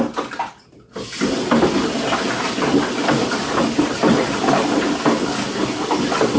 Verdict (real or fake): real